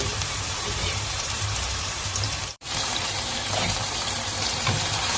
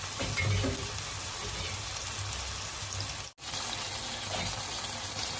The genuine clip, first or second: second